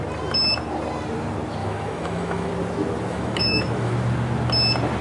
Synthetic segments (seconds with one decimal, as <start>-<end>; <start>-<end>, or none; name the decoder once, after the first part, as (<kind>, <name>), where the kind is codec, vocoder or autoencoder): 1.6-2.5 (autoencoder, DAC-VAE); 3.1-3.9